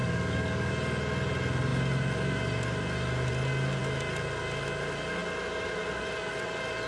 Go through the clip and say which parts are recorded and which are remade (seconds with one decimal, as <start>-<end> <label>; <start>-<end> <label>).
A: 0.0-0.7 remade; 0.7-6.9 recorded